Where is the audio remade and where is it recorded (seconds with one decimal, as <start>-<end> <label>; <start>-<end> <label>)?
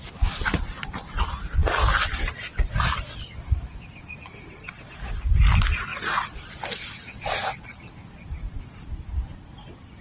0.0-10.0 recorded